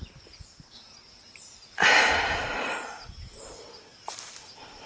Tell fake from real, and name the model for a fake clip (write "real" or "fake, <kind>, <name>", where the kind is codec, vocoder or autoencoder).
real